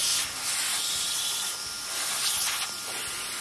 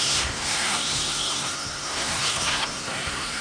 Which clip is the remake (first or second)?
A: second